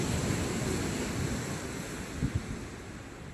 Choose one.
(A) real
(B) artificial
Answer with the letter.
A